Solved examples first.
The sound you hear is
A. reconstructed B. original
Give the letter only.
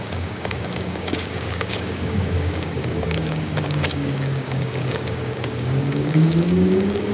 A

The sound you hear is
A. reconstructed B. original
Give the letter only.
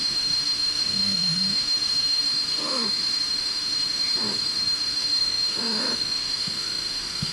A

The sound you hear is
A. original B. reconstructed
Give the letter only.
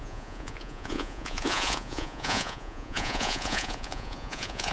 B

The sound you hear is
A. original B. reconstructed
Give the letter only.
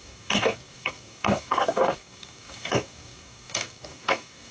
B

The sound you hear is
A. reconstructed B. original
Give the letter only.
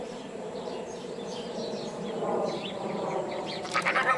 A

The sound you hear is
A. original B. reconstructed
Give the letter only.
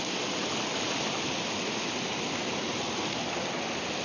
A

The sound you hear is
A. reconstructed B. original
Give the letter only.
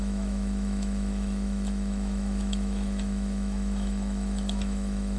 A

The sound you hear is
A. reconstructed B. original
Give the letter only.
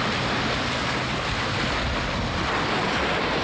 B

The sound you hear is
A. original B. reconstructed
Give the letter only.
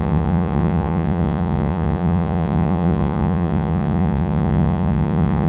B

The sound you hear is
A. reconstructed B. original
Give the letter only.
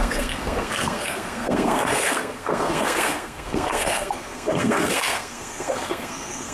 A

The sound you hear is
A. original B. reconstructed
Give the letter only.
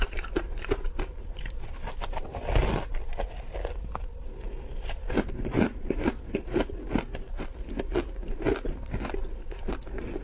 A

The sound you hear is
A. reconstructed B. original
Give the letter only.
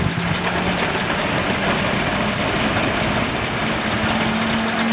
B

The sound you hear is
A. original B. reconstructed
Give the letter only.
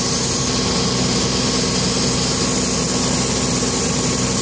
A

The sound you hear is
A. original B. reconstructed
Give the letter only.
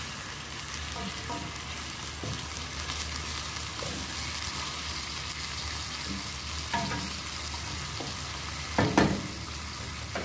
A